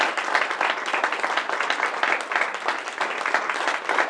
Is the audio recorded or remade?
recorded